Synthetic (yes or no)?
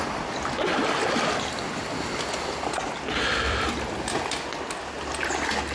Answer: no